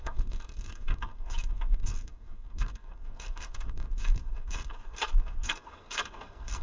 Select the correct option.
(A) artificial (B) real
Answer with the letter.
A